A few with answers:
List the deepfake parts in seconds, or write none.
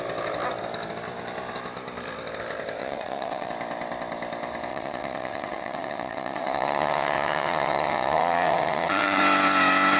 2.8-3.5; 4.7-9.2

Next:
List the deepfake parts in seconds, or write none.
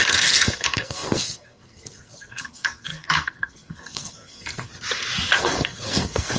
0.0-4.7; 5.4-6.4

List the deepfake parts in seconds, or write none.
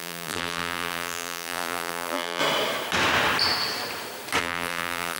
0.0-2.4; 4.4-5.2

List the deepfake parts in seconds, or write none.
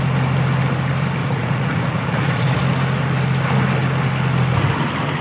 1.2-2.6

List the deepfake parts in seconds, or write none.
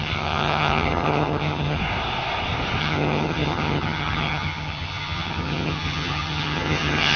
0.0-1.8; 2.8-7.2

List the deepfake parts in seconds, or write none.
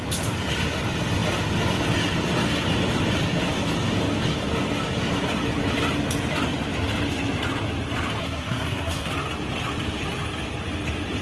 8.2-9.1